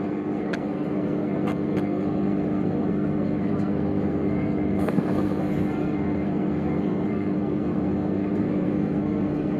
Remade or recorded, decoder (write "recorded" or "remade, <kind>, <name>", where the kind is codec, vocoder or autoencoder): remade, codec, SNAC